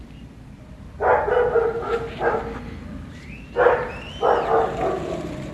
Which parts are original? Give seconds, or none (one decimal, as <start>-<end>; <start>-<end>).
0.0-5.5